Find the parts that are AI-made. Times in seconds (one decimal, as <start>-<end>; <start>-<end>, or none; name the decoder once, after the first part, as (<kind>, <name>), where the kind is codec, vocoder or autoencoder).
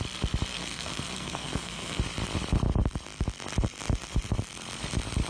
0.5-2.0 (codec, SNAC)